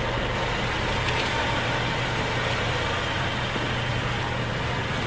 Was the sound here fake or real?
real